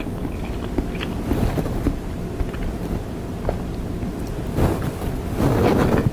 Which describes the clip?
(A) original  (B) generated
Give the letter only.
A